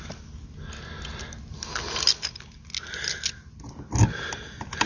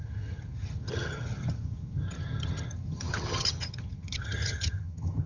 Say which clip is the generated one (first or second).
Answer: second